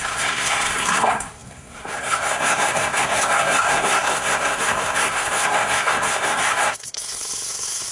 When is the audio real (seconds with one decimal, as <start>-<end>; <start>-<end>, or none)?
none